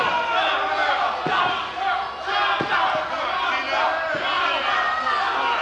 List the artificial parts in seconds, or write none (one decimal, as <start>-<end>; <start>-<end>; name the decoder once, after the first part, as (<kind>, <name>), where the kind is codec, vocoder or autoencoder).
none